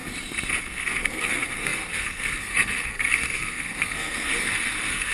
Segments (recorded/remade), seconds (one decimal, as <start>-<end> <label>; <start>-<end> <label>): 0.0-0.6 recorded; 0.6-5.1 remade